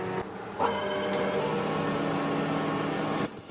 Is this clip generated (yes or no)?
no